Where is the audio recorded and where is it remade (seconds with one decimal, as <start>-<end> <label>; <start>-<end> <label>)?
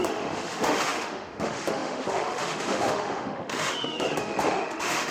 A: 0.0-5.1 remade